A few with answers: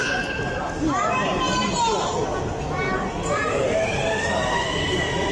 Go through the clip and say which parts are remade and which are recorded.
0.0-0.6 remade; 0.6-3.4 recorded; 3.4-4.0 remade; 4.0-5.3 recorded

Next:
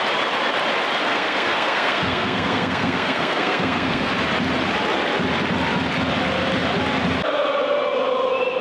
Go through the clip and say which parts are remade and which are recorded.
0.0-1.1 recorded; 1.1-4.1 remade; 4.1-8.6 recorded